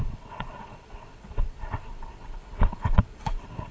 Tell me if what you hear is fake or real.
fake